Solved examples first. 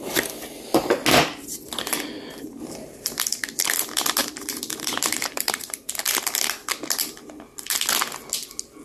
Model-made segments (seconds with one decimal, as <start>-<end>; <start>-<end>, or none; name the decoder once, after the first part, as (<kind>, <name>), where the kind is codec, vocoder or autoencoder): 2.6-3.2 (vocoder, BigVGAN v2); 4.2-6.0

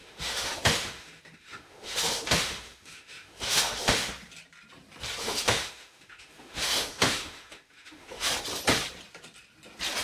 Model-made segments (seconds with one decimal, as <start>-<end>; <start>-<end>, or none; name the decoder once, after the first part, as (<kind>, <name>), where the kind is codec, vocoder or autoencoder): 0.0-4.1 (autoencoder, DAC-VAE); 5.2-8.3

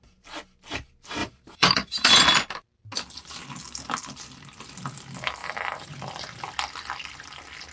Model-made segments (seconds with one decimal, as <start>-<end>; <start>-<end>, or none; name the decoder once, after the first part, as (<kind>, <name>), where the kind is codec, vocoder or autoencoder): 1.2-2.1 (vocoder, BigVGAN v2); 5.4-5.9

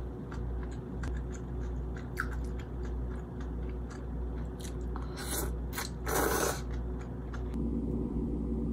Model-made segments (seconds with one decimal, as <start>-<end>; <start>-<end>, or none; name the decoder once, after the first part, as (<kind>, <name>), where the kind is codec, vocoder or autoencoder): none

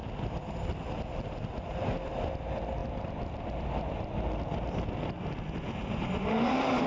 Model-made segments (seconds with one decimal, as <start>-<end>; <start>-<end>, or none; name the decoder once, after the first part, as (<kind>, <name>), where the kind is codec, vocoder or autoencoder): none